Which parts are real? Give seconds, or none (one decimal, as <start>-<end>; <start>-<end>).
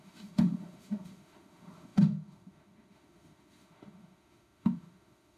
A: none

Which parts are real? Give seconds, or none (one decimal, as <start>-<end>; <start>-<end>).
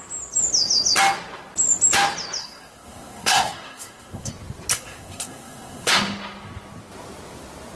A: 0.0-2.4; 4.3-4.7; 5.9-7.8